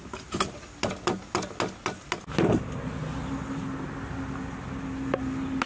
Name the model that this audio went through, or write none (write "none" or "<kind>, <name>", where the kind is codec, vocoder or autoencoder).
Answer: none